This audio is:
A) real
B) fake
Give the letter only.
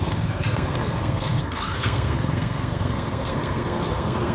B